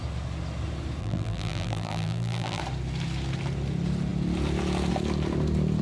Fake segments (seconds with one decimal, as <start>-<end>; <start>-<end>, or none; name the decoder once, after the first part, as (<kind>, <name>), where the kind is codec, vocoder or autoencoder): 1.0-2.6 (vocoder, BigVGAN v2)

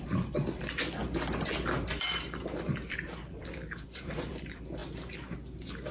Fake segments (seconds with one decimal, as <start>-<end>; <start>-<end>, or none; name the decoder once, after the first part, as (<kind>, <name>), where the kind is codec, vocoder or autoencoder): 0.0-1.0 (vocoder, BigVGAN v2); 2.0-4.8